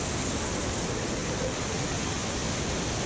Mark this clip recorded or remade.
recorded